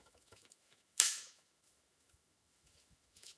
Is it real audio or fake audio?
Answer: fake